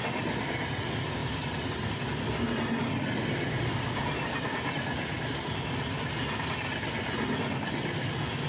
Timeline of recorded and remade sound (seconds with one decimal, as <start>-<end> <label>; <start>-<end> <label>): 0.0-8.5 recorded